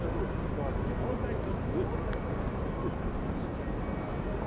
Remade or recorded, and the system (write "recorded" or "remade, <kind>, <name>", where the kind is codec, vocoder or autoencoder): recorded